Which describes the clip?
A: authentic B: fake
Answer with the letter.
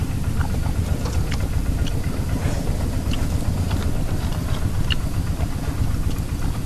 A